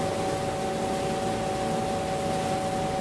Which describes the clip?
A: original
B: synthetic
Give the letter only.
A